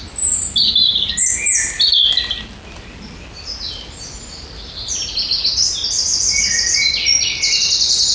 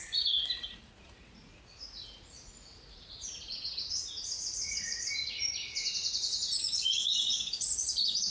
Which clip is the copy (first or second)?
second